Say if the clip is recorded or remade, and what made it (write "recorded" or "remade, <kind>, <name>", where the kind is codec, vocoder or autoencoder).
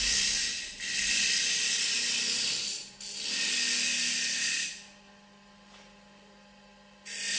recorded